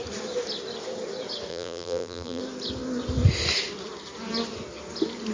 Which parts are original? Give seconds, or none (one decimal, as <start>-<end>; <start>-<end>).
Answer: 0.0-1.5; 2.4-5.3